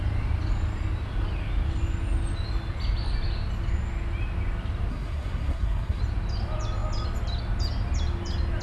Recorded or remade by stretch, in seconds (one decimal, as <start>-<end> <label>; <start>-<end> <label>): 0.0-4.9 recorded; 4.9-6.0 remade; 6.0-8.6 recorded